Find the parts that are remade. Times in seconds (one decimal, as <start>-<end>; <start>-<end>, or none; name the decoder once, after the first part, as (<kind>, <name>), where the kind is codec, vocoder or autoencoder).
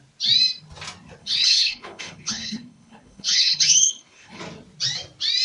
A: 1.2-4.4 (codec, HILCodec)